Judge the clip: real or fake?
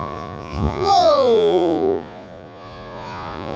fake